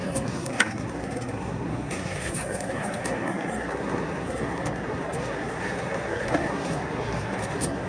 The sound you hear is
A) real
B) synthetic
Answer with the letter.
B